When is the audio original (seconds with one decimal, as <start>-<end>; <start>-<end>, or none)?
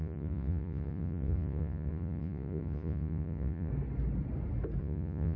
3.7-4.8